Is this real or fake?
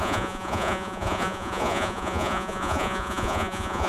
fake